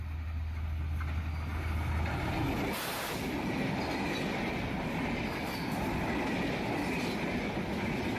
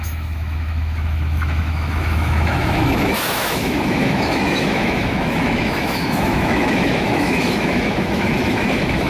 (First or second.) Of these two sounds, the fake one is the second